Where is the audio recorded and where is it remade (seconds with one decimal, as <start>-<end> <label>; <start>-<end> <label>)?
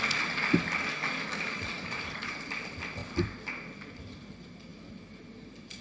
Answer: 0.0-0.9 recorded; 0.9-2.3 remade; 2.3-5.8 recorded